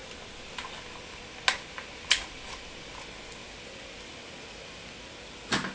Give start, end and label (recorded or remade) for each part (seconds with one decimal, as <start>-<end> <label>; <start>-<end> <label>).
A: 0.0-5.7 recorded